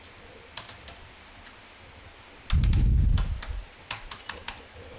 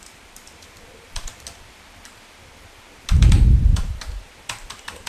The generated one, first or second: second